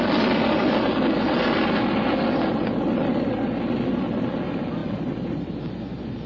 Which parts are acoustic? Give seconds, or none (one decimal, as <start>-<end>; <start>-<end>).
0.0-6.3